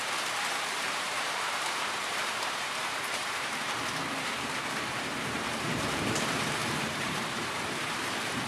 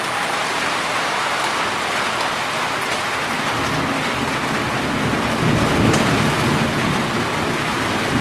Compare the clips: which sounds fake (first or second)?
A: first